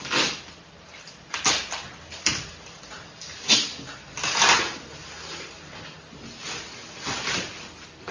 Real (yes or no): yes